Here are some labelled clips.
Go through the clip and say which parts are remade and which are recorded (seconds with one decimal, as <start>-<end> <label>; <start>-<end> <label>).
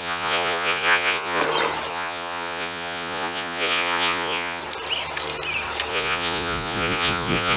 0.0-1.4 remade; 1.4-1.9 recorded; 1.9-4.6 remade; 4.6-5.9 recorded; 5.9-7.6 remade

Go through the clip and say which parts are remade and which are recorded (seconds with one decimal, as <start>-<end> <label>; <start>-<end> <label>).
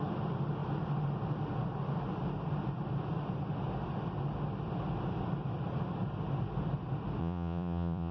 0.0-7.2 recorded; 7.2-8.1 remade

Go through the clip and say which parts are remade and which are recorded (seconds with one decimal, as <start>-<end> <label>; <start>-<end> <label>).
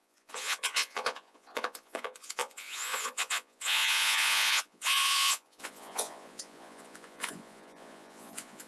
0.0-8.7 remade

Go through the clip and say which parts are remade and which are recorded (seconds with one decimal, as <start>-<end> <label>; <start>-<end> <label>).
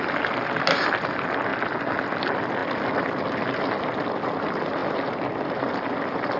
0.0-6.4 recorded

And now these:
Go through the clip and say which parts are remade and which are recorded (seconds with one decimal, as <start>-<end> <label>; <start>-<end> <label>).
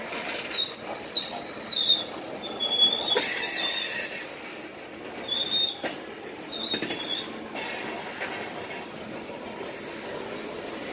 0.0-10.9 recorded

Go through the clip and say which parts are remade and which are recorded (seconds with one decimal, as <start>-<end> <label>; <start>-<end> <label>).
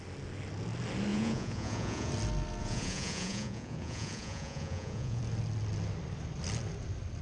0.0-1.1 recorded; 1.1-2.1 remade; 2.1-2.6 recorded; 2.6-5.2 remade; 5.2-7.2 recorded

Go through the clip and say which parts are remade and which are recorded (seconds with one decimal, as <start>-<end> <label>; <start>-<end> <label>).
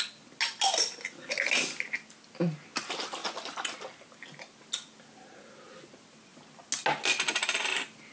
0.0-8.1 recorded